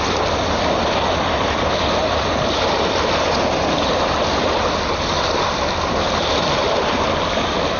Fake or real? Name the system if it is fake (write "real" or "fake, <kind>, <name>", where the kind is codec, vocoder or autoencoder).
real